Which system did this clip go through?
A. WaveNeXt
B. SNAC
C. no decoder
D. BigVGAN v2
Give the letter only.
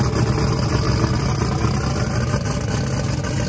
C